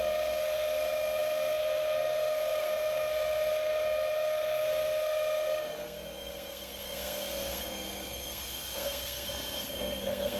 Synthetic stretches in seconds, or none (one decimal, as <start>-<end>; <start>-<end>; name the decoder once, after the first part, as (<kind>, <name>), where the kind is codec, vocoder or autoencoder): 0.0-10.4 (codec, SNAC)